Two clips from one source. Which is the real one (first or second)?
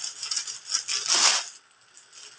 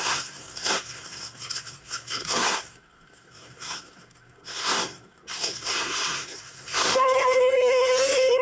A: first